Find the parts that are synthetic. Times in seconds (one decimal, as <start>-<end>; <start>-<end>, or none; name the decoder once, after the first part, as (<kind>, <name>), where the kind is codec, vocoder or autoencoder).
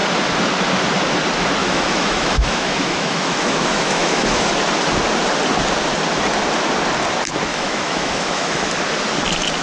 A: 1.6-4.5 (autoencoder, DAC-VAE); 7.5-8.8